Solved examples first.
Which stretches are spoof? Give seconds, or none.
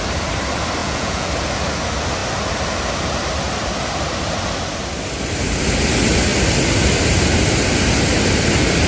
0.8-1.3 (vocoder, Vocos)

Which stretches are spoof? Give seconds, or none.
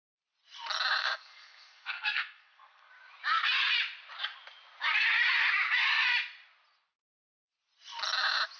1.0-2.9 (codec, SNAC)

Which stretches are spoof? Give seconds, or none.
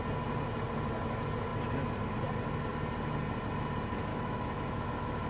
4.1-5.3 (autoencoder, DAC-VAE)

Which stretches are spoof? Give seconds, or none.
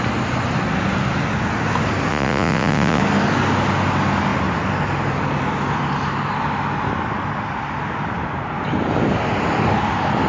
2.1-3.0 (vocoder, Vocos)